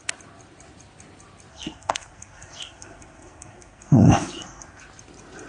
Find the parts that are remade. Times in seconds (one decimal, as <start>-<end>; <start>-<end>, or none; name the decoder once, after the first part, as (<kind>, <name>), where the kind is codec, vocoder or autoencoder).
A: 1.5-4.8 (codec, SNAC)